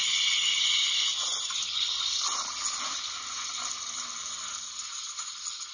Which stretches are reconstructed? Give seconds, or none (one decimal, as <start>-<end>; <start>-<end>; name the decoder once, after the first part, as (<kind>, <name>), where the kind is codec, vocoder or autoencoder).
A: none